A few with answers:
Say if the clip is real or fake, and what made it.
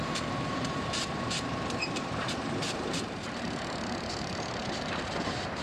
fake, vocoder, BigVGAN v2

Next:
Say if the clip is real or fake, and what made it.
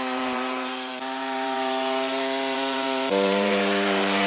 fake, vocoder, BigVGAN v2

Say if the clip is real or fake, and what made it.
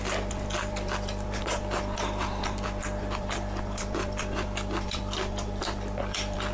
fake, vocoder, BigVGAN v2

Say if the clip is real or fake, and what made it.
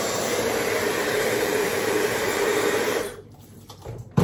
fake, vocoder, BigVGAN v2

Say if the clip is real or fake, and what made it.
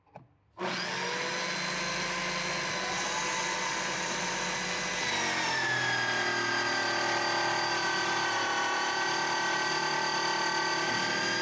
real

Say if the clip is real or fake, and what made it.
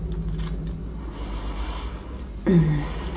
real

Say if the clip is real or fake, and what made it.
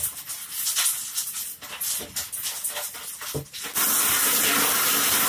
real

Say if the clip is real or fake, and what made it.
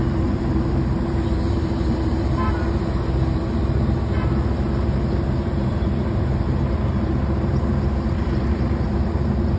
fake, vocoder, BigVGAN v2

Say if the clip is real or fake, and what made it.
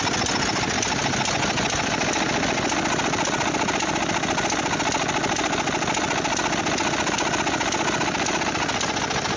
real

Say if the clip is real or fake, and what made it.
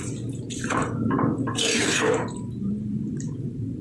fake, vocoder, BigVGAN v2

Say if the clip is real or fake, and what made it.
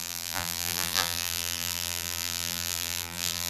fake, vocoder, BigVGAN v2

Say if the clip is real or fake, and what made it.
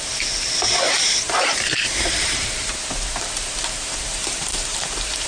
fake, vocoder, BigVGAN v2